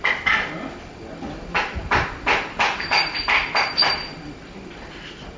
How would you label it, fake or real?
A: fake